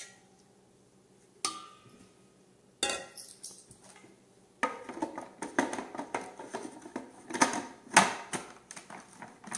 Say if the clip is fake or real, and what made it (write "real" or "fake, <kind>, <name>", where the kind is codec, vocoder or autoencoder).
real